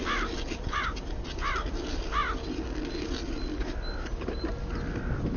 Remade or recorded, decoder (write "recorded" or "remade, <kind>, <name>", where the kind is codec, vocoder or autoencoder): recorded